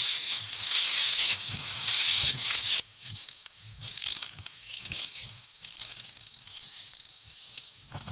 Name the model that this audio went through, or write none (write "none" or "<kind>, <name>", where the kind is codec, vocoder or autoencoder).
codec, DAC